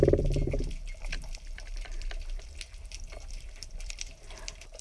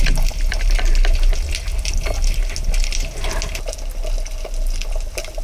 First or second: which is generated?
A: first